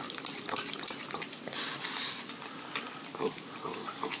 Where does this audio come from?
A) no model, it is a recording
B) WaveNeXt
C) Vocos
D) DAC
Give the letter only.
A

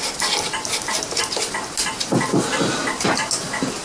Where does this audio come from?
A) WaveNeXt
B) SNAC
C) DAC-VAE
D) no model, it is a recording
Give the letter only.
D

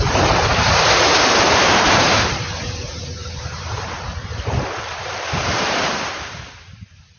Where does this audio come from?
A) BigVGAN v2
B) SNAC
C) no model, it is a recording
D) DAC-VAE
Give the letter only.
A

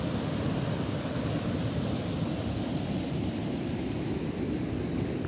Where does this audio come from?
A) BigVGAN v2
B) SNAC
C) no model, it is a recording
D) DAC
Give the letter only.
C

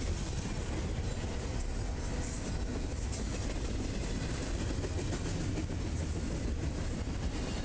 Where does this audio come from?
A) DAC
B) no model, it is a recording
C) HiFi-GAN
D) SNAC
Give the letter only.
B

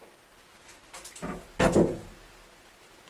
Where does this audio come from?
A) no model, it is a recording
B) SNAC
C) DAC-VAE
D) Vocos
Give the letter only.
A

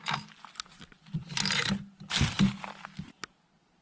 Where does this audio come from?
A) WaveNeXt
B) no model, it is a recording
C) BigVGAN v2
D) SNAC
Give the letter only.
B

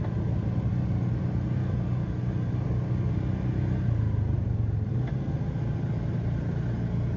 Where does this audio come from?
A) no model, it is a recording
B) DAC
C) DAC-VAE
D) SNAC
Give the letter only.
A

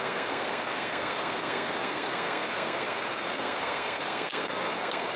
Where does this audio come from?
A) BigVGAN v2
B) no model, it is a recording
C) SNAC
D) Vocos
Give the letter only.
C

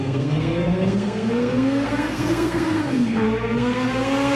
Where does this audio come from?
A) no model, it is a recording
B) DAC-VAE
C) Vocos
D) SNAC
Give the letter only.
D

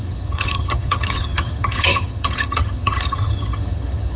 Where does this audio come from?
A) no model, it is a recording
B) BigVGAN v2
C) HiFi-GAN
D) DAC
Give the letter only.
C